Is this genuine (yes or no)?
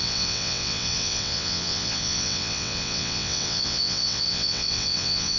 no